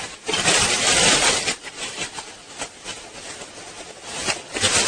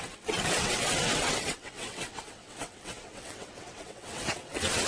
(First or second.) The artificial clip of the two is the second